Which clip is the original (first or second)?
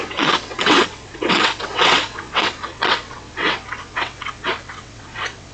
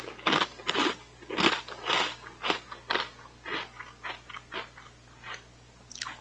second